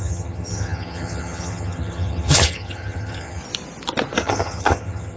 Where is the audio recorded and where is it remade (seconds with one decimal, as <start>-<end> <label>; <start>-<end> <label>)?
0.0-3.4 remade; 3.4-4.2 recorded; 4.2-5.2 remade